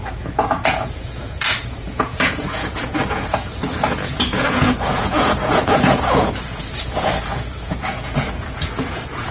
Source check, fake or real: fake